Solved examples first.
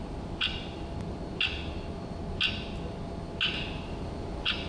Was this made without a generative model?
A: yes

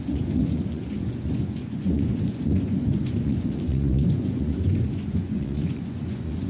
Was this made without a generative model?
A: no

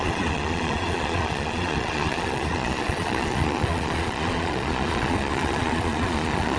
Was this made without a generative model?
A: no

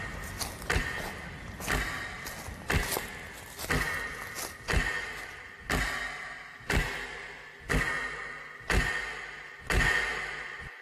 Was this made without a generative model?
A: yes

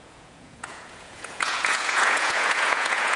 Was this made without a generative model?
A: no